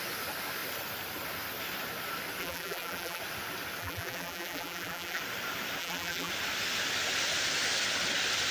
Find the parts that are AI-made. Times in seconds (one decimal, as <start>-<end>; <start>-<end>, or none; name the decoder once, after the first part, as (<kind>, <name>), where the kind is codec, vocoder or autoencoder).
2.4-3.2 (vocoder, BigVGAN v2); 3.8-5.2; 5.8-6.3